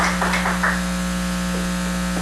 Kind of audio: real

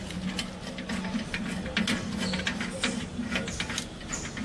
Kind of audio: real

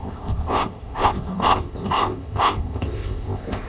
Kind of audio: fake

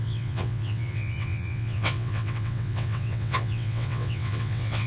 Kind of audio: fake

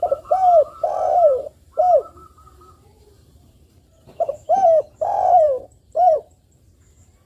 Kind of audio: fake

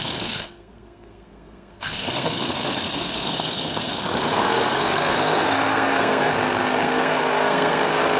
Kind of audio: fake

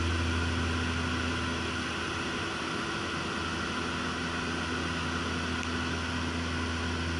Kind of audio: real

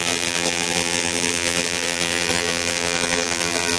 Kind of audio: fake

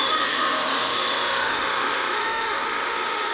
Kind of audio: fake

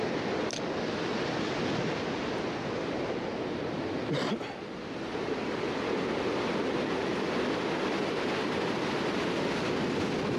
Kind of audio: real